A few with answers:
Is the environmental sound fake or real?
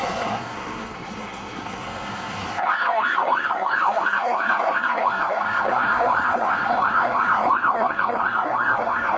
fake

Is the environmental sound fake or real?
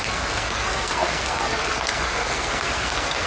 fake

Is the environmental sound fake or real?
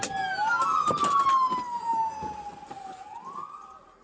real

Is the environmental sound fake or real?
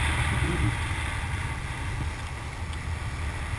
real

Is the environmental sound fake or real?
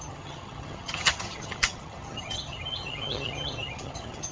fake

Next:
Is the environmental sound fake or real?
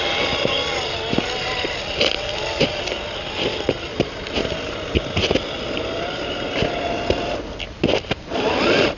real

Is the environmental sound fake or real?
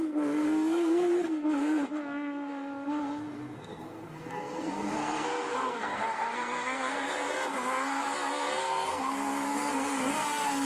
fake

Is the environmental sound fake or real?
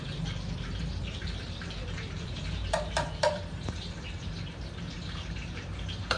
fake